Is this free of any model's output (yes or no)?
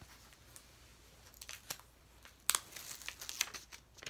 yes